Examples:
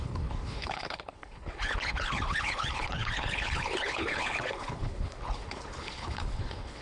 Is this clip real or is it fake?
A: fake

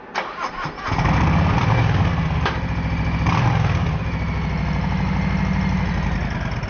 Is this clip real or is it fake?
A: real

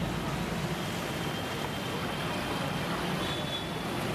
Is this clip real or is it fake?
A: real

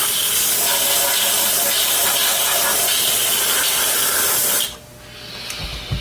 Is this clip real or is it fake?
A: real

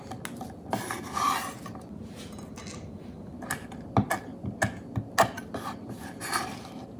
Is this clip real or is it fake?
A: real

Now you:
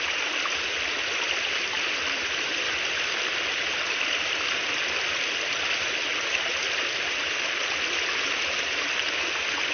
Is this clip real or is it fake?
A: real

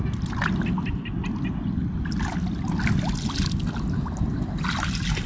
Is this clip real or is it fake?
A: real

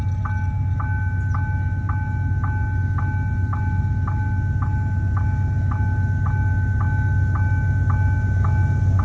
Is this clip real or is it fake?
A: real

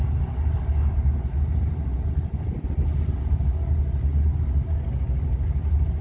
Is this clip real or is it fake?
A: real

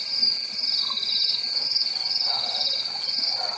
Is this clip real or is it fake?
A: real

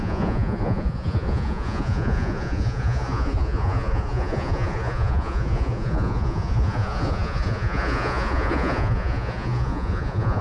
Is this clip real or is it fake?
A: fake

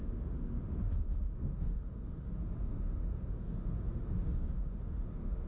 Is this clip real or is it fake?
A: fake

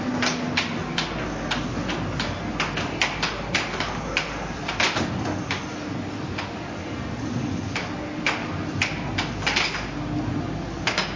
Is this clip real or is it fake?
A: real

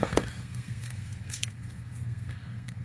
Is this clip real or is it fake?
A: fake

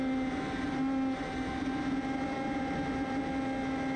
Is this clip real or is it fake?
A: real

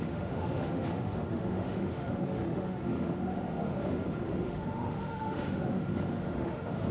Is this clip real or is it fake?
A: fake